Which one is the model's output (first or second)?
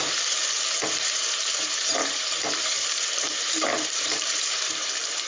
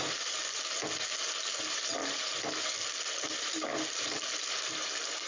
first